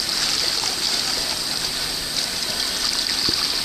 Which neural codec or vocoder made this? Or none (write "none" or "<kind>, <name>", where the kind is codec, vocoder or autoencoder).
none